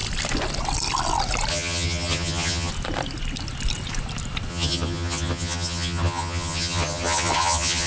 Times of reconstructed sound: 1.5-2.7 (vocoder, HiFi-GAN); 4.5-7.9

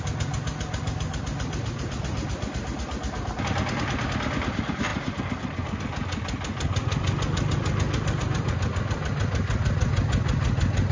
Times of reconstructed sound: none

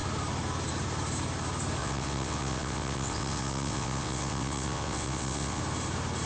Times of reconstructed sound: 1.8-5.6 (vocoder, WaveNeXt)

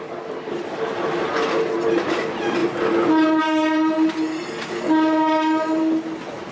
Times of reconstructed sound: none

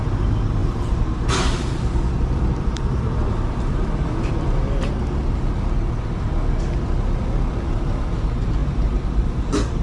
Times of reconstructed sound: 0.6-3.9 (vocoder, BigVGAN v2); 8.6-9.8

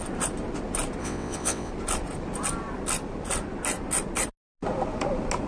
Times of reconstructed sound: 1.0-1.7 (vocoder, WaveNeXt)